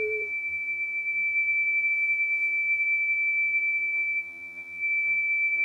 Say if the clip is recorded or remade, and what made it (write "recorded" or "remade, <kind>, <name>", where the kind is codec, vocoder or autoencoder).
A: remade, vocoder, BigVGAN v2